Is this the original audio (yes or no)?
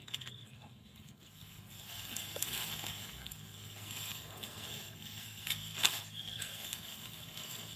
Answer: no